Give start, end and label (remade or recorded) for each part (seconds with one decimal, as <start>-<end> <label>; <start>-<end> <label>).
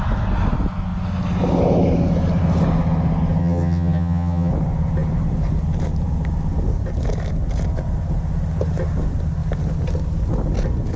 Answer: 0.0-3.4 recorded; 3.4-4.5 remade; 4.5-11.0 recorded